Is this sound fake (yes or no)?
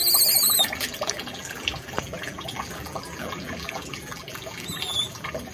yes